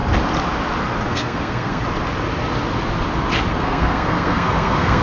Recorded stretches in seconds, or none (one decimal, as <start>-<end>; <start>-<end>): 0.0-1.1; 1.8-3.5

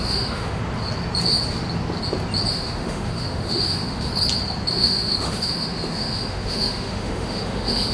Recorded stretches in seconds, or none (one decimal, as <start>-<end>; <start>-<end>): 0.6-2.5; 4.1-4.7

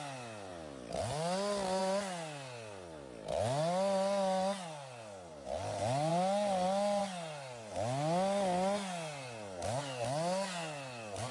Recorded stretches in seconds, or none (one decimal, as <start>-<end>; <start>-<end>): 0.0-11.3

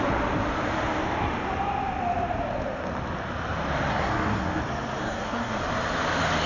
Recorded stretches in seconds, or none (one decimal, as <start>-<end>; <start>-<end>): 0.0-3.9; 4.6-5.0; 5.6-6.5

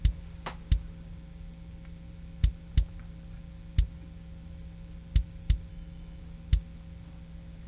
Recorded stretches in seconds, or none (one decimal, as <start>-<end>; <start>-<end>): 0.0-5.7; 6.2-7.7

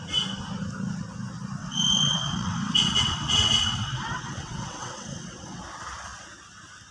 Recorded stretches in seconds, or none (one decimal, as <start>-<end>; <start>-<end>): 0.0-1.6; 5.6-6.9

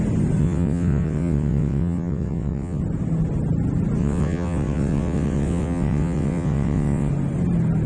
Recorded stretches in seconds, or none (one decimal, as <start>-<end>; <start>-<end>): 0.0-0.4; 2.8-4.0; 7.1-7.9